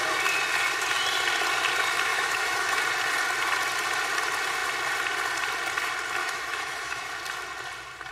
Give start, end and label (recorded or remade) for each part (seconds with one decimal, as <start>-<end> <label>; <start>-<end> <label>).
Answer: 0.0-2.1 recorded; 2.1-2.8 remade; 2.8-6.2 recorded; 6.2-7.1 remade; 7.1-8.1 recorded